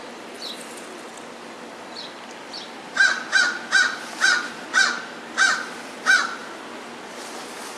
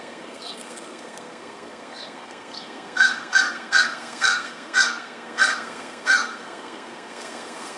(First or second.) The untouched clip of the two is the first